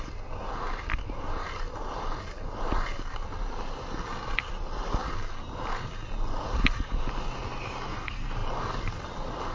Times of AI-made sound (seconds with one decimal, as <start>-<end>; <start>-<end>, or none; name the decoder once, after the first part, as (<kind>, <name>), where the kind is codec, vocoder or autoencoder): none